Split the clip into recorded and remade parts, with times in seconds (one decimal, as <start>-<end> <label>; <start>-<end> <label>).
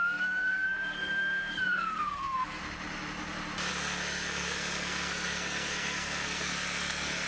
0.0-2.6 remade; 2.6-3.7 recorded; 3.7-7.3 remade